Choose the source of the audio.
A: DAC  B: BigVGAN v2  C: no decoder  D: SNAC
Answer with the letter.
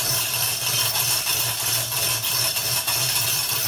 C